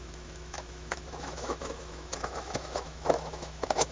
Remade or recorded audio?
remade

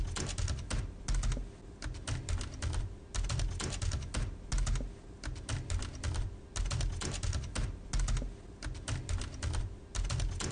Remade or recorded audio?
recorded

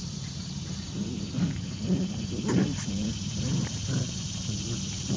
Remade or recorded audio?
remade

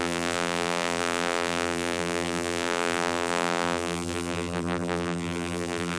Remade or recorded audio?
remade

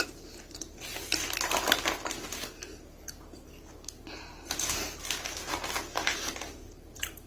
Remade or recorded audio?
recorded